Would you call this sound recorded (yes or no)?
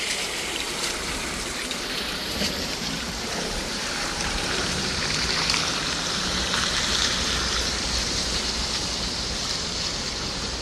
no